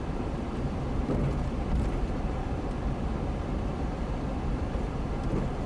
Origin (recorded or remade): remade